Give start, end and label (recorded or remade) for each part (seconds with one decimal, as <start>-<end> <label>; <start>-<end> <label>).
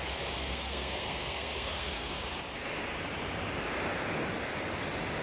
0.0-0.4 recorded; 0.4-2.2 remade; 2.2-5.2 recorded